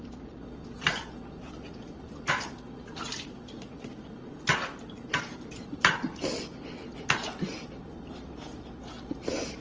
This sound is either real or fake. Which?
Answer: real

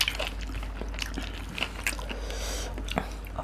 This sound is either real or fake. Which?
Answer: real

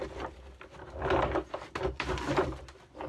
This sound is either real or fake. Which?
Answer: real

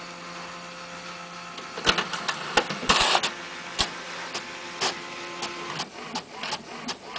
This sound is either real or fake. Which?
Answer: real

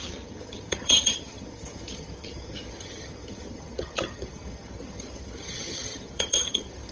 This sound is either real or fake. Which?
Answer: fake